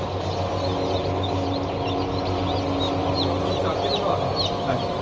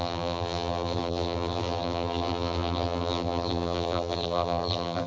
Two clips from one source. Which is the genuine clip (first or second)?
first